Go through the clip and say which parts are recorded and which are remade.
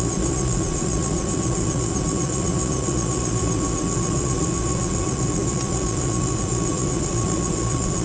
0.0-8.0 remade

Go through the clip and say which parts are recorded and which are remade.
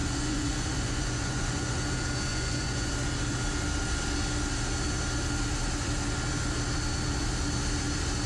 0.0-1.8 remade; 1.8-2.3 recorded; 2.3-2.9 remade; 2.9-8.3 recorded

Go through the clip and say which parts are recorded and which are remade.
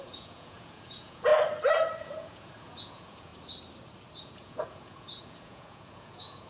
0.0-1.3 remade; 1.3-2.0 recorded; 2.0-3.3 remade; 3.3-4.2 recorded; 4.2-6.5 remade